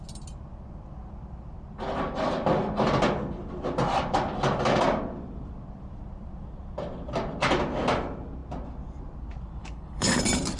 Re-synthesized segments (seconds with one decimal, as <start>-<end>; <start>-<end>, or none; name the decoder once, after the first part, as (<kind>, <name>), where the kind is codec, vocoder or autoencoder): 9.6-10.2 (codec, HILCodec)